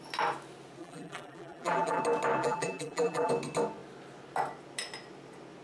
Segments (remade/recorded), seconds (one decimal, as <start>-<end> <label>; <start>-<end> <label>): 0.0-0.8 recorded; 0.8-2.0 remade; 2.0-2.4 recorded; 2.4-3.3 remade; 3.3-5.6 recorded